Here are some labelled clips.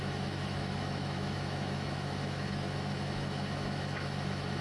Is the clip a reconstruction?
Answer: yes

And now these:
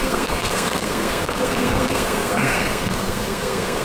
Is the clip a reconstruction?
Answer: yes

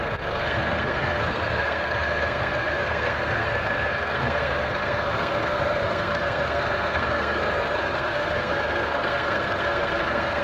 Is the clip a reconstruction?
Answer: yes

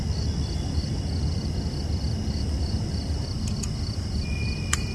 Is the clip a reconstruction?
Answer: no